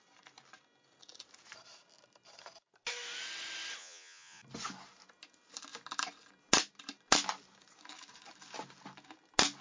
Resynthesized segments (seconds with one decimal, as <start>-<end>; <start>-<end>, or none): 3.8-4.4

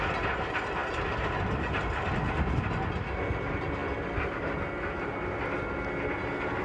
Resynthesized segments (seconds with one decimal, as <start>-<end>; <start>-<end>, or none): none

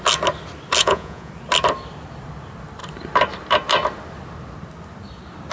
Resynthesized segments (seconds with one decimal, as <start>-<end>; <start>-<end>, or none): 0.8-1.3

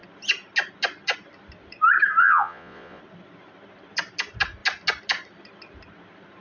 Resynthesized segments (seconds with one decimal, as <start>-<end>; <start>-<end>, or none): 2.2-3.0

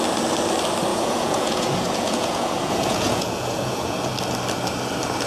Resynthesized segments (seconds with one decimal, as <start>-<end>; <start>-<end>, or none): 0.9-4.1

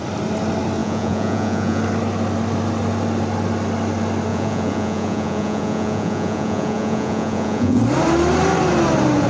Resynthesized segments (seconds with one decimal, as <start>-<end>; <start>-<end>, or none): 0.8-1.8; 4.3-7.8

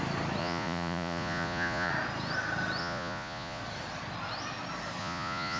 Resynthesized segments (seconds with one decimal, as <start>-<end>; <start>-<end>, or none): 0.4-1.9; 2.8-3.6; 5.0-5.6